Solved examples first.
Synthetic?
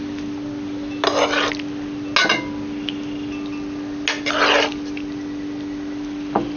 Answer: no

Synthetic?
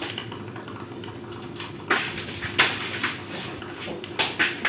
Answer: no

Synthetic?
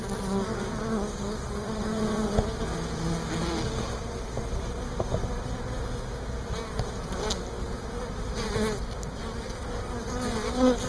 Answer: no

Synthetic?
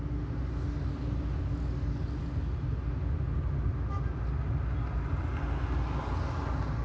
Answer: no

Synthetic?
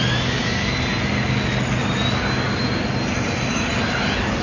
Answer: no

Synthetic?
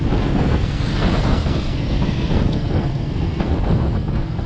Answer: yes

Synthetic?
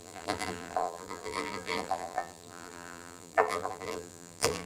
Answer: yes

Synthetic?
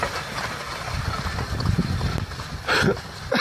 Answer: no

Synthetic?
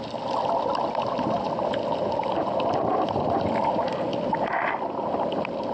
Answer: no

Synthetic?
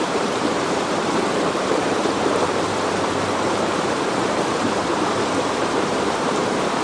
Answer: yes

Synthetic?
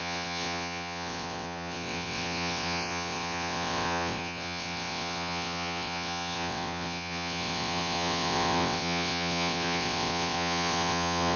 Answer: yes